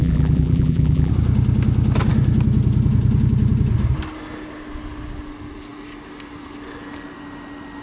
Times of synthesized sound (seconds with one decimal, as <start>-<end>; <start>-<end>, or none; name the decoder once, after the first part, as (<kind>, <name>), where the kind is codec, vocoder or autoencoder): 0.0-1.1 (vocoder, BigVGAN v2)